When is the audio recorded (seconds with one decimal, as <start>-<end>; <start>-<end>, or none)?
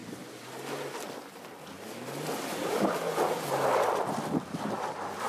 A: 0.5-1.7